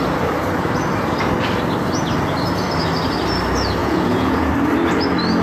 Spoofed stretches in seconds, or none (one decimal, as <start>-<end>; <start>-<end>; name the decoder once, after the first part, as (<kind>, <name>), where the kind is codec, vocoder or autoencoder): 3.8-4.5 (vocoder, Vocos)